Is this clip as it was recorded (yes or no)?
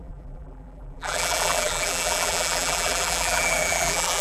no